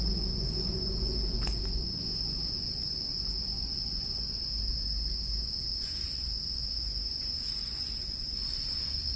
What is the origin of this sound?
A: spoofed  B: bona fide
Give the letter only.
A